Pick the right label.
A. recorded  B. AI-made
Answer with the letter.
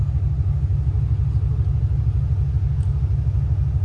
A